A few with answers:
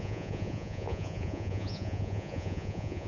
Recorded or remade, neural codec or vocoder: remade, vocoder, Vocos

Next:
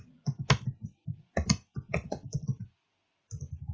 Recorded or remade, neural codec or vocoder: recorded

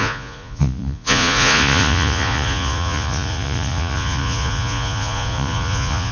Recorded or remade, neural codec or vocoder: remade, vocoder, Vocos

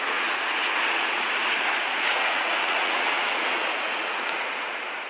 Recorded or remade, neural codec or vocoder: remade, vocoder, Vocos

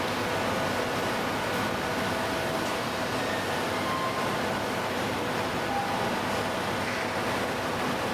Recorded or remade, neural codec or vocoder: recorded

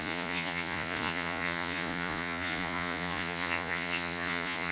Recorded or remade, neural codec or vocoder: remade, vocoder, Vocos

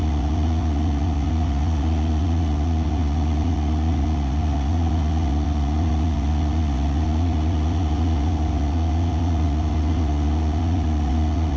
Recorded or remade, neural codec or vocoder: remade, vocoder, Vocos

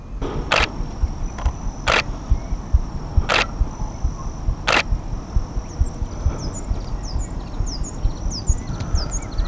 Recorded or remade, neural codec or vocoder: recorded